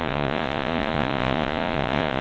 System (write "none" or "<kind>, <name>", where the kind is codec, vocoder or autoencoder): vocoder, Vocos